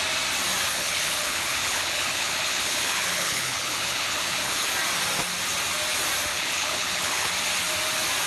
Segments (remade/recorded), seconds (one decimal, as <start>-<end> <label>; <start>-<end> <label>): 0.0-0.7 recorded; 0.7-4.7 remade; 4.7-6.3 recorded; 6.3-7.3 remade; 7.3-8.3 recorded